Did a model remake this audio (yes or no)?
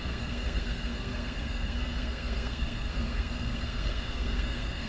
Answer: yes